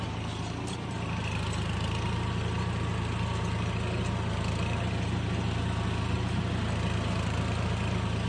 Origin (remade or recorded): recorded